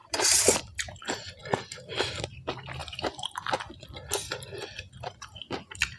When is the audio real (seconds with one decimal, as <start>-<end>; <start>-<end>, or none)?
0.6-6.0